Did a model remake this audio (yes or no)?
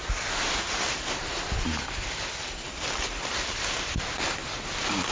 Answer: no